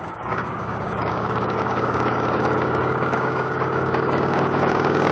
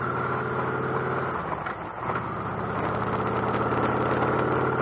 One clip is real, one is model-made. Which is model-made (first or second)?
first